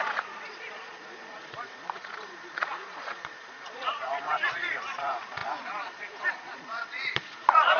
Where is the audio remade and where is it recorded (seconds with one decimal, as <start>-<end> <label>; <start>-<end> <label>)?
0.0-7.8 remade